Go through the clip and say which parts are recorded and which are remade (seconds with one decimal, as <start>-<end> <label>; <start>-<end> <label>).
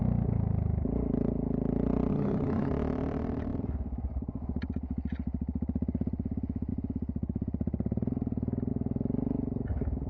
0.0-2.1 recorded; 2.1-2.7 remade; 2.7-10.1 recorded